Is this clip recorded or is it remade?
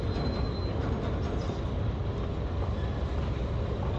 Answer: recorded